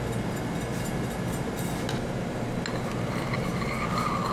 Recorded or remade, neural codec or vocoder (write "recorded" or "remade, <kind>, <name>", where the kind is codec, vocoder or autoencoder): recorded